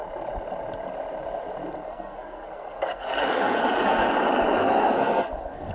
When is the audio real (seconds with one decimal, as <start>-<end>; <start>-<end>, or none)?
0.0-1.8; 4.1-4.6